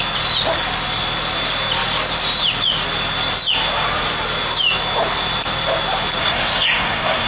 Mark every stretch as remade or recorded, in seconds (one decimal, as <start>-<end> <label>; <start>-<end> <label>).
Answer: 0.0-6.2 recorded; 6.2-7.3 remade